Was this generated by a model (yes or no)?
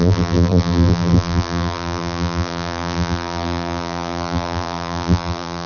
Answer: yes